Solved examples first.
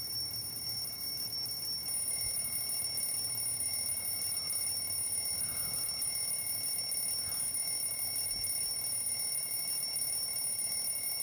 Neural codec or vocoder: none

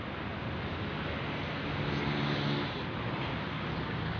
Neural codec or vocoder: none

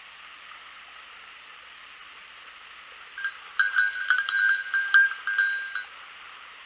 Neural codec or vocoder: vocoder, BigVGAN v2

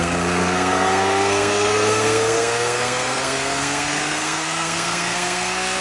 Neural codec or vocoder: codec, SNAC